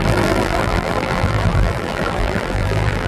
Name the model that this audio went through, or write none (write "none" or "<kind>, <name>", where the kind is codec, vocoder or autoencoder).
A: vocoder, BigVGAN v2